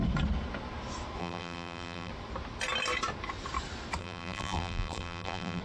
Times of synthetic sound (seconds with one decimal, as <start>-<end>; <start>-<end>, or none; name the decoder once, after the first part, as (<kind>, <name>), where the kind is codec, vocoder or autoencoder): 1.2-2.1 (vocoder, BigVGAN v2); 4.0-5.6

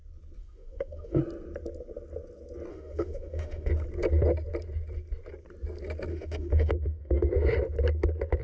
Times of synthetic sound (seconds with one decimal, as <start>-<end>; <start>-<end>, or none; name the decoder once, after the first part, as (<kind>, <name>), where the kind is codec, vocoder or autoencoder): 0.4-1.2 (autoencoder, DAC-VAE); 2.7-3.7; 6.1-7.3

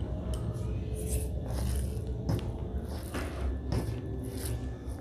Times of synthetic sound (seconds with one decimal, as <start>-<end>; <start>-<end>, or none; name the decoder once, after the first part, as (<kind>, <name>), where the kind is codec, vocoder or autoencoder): none

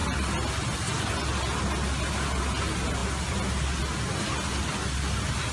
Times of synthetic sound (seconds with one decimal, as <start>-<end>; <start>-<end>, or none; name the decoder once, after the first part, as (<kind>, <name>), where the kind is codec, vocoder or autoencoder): none

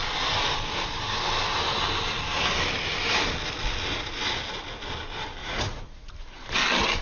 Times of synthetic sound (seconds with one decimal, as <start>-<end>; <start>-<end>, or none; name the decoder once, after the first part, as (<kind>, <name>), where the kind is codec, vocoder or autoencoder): 5.4-6.1 (vocoder, Vocos)

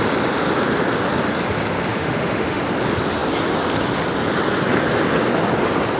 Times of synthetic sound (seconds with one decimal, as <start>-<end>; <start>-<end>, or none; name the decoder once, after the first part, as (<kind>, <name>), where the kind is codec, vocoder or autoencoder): 1.9-2.6 (autoencoder, DAC-VAE)

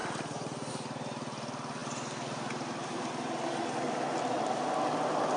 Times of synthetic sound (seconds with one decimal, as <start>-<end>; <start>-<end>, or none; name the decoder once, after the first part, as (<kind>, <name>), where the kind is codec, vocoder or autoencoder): 0.0-0.7 (vocoder, BigVGAN v2)